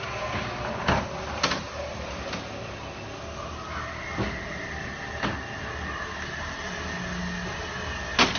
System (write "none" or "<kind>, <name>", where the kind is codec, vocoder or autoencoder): none